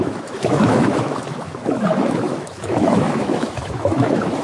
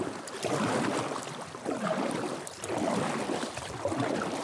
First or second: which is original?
second